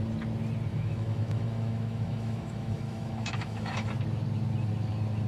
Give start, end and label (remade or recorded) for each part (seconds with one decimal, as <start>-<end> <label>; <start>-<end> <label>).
0.0-0.7 recorded; 0.7-3.9 remade; 3.9-5.3 recorded